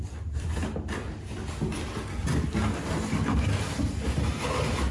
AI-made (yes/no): no